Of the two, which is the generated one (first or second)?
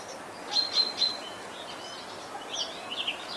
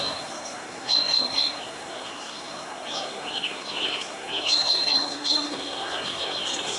second